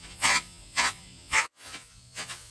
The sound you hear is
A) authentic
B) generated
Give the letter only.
B